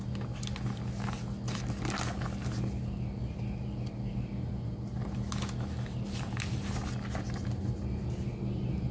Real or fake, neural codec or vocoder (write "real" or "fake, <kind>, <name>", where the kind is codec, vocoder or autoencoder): real